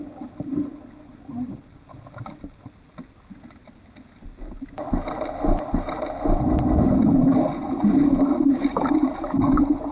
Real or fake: real